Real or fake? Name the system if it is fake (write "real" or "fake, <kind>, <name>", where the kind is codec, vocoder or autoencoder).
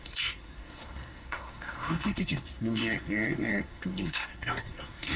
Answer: fake, codec, SNAC